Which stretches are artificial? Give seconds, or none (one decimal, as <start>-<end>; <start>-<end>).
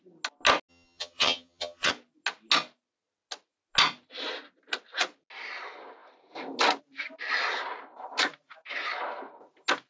0.7-1.9